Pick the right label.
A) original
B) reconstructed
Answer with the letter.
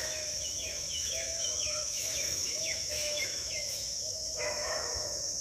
B